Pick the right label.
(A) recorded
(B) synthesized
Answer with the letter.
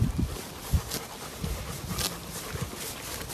A